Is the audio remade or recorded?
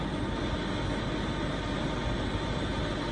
recorded